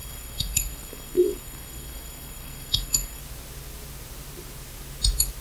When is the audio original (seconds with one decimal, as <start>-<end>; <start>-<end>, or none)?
3.2-5.4